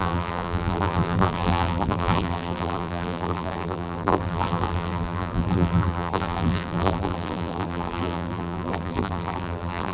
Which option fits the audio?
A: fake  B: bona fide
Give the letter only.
A